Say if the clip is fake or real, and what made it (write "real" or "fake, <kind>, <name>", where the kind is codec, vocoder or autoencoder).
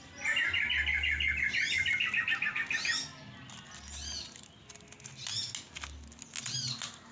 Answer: real